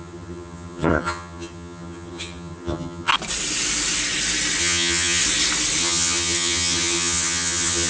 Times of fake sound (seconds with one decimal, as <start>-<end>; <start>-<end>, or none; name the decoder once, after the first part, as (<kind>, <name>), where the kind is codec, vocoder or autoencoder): 0.0-3.1 (vocoder, HiFi-GAN); 4.6-5.2; 5.8-7.9